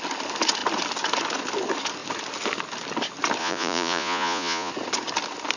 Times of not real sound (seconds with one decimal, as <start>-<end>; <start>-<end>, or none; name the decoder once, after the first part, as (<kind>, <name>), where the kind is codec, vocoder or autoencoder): 3.4-4.7 (vocoder, Vocos)